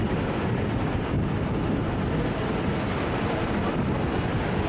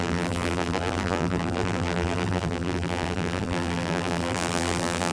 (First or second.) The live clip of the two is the first